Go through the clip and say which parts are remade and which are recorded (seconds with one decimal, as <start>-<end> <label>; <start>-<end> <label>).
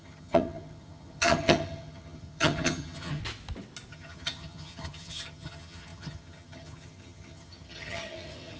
0.0-3.2 remade; 3.2-3.9 recorded; 3.9-8.6 remade